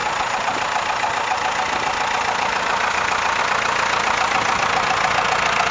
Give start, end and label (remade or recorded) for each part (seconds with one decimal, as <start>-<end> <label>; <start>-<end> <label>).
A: 0.0-5.7 recorded